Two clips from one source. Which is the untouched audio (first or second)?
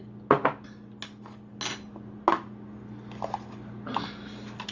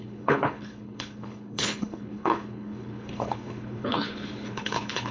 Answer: first